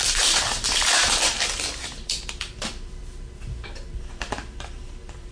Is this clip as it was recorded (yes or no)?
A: no